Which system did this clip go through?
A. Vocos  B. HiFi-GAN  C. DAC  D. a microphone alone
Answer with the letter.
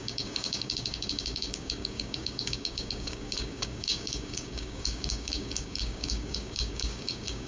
C